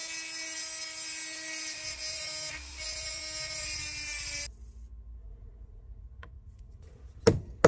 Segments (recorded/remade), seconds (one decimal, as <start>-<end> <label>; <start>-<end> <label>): 0.0-5.2 recorded; 5.2-7.2 remade; 7.2-7.7 recorded